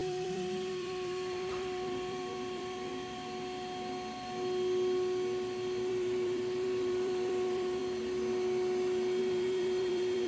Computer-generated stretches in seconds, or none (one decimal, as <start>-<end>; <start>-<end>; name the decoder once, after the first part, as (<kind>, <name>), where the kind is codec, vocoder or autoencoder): 0.0-2.9 (vocoder, BigVGAN v2); 5.9-7.8; 9.2-10.3